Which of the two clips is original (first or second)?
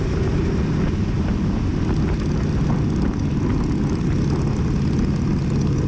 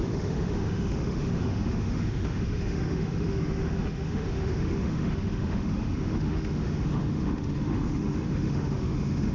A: first